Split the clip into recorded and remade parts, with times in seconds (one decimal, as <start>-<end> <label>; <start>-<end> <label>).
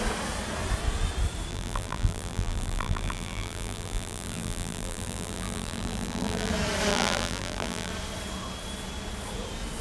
0.0-1.5 recorded; 1.5-6.5 remade; 6.5-6.9 recorded; 6.9-7.9 remade; 7.9-9.8 recorded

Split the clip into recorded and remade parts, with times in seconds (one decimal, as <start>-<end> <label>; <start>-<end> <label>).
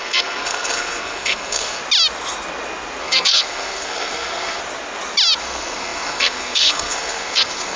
0.0-1.8 remade; 1.8-3.0 recorded; 3.0-4.6 remade; 4.6-5.4 recorded; 5.4-7.8 remade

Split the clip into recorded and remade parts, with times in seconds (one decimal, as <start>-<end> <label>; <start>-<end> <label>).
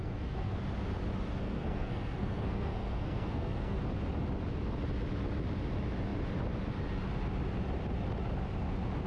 0.0-0.6 remade; 0.6-1.4 recorded; 1.4-3.8 remade; 3.8-9.1 recorded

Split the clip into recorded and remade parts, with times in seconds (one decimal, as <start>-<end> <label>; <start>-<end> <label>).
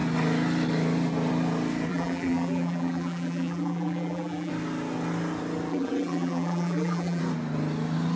0.0-1.9 recorded; 1.9-4.5 remade; 4.5-5.7 recorded; 5.7-7.2 remade; 7.2-8.2 recorded